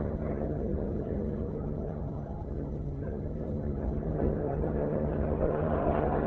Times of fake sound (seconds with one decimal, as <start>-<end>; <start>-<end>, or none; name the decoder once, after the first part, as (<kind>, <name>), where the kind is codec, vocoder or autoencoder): 0.0-6.3 (vocoder, HiFi-GAN)